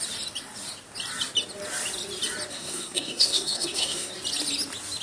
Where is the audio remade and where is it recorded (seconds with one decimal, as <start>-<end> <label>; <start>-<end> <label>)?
0.0-2.5 recorded; 2.5-4.1 remade; 4.1-5.0 recorded